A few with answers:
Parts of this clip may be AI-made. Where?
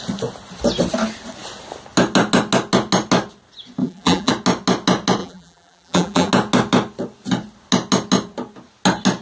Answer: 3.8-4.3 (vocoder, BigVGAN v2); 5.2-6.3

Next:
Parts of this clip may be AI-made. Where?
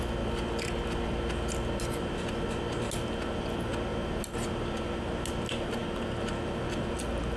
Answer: none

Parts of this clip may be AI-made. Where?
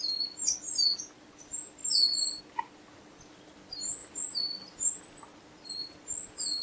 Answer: none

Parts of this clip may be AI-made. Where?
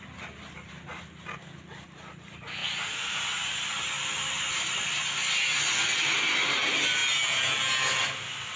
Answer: none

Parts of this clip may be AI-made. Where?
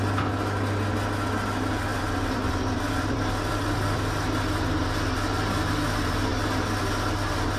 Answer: 1.9-4.1 (vocoder, BigVGAN v2)